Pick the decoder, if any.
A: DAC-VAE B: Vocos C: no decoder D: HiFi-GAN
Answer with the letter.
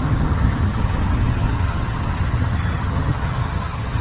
D